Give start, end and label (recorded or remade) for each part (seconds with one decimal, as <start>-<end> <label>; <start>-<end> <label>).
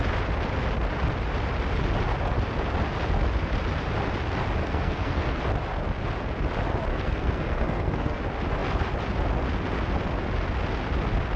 0.0-4.6 recorded; 4.6-5.4 remade; 5.4-6.9 recorded; 6.9-8.2 remade; 8.2-11.4 recorded